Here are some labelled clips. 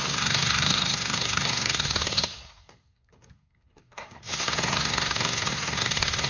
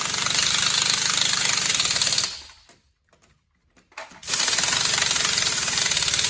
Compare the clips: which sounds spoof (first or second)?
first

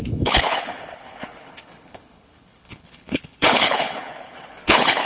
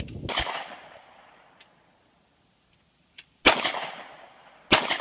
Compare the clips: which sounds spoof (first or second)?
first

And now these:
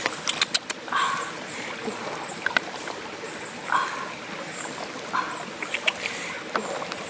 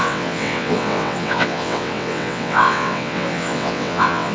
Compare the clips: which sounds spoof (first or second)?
second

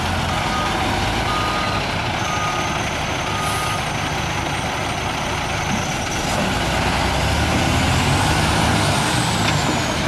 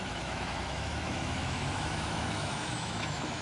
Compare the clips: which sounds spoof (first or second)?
second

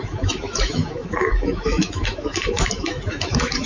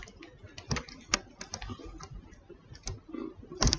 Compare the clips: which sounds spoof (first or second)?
first